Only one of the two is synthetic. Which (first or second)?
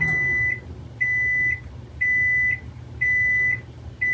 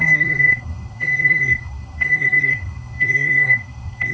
second